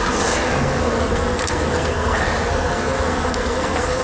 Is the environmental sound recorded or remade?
remade